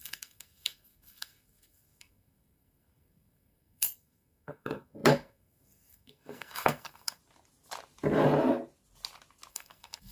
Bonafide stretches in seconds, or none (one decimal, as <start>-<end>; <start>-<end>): 7.2-9.5